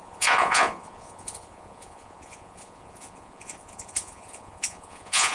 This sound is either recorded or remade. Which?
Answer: remade